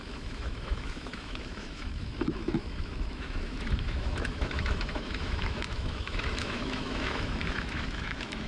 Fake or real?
fake